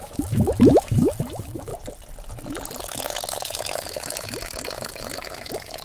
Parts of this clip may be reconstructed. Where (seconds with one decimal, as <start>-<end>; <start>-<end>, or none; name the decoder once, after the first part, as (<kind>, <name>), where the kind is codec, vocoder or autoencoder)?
0.0-1.7 (autoencoder, DAC-VAE); 2.8-5.8